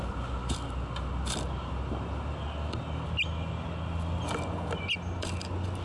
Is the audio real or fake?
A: real